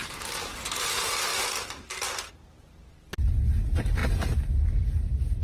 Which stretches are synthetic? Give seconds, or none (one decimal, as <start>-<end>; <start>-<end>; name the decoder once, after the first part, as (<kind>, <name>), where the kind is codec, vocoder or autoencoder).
1.3-2.3 (vocoder, BigVGAN v2)